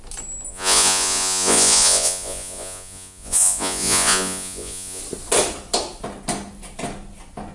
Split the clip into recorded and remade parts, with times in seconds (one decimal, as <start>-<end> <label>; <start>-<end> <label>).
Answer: 0.0-0.5 recorded; 0.5-5.0 remade; 5.0-7.5 recorded